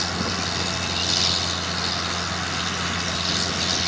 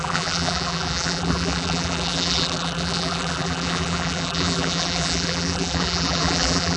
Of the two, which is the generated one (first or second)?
second